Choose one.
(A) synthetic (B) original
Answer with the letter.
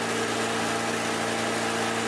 B